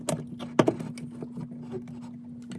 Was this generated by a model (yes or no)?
no